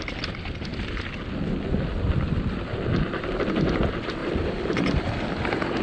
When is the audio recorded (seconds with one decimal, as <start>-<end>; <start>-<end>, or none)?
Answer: 0.0-5.8